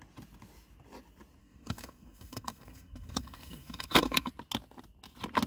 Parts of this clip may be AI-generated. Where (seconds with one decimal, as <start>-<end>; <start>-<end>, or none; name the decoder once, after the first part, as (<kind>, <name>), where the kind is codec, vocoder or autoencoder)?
1.4-4.3 (codec, SNAC)